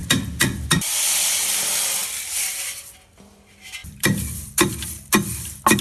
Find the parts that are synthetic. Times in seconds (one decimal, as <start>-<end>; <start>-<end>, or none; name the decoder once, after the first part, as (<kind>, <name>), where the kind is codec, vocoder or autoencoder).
3.8-4.7 (vocoder, BigVGAN v2)